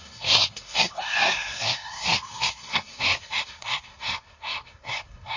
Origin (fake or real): fake